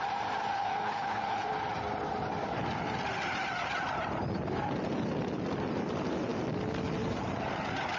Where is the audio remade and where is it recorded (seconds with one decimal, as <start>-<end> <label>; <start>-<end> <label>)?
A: 0.0-0.5 recorded; 0.5-1.5 remade; 1.5-8.0 recorded